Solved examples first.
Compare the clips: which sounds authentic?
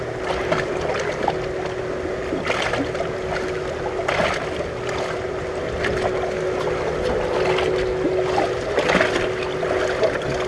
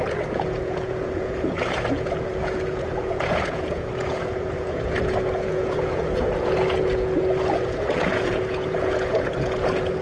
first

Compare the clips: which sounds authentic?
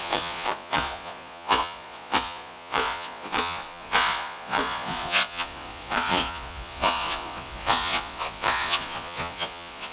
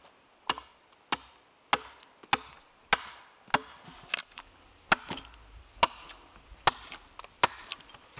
second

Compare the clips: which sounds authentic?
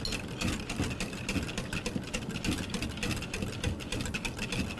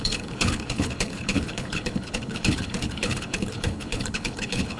first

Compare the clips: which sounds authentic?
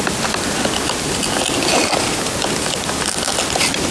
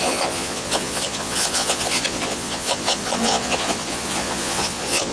first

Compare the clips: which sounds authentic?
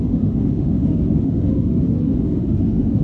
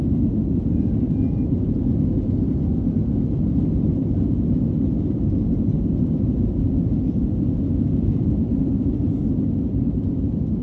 second